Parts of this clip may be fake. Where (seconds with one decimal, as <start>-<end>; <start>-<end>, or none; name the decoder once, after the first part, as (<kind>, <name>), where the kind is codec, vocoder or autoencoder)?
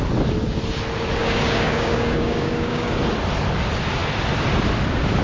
1.2-3.0 (codec, DAC)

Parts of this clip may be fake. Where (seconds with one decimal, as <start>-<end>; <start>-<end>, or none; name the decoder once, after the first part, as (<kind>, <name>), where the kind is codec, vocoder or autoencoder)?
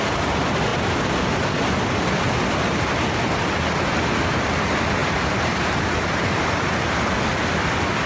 0.7-1.3 (vocoder, BigVGAN v2); 5.0-7.2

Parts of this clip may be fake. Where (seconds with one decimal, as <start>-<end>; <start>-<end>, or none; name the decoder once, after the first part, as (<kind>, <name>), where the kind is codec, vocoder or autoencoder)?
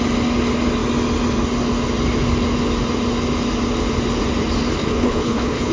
4.8-5.7 (codec, HILCodec)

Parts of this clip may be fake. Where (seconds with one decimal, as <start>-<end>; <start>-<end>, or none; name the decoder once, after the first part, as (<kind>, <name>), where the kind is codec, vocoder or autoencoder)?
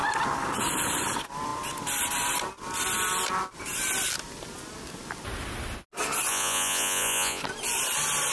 6.3-7.4 (vocoder, Vocos)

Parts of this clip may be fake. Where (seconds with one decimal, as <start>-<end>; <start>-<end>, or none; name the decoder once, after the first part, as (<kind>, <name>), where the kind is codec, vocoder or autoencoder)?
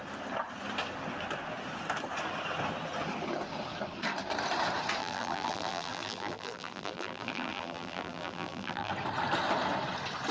5.0-8.9 (vocoder, BigVGAN v2)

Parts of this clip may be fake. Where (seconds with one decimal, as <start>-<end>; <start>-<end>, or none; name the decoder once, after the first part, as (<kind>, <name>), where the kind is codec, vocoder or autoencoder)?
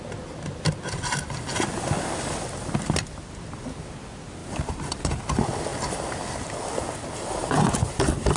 4.4-5.2 (vocoder, BigVGAN v2); 7.4-8.4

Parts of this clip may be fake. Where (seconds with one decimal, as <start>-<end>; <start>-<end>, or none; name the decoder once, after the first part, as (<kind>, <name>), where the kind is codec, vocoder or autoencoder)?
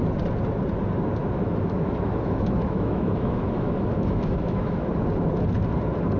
1.2-4.9 (autoencoder, DAC-VAE)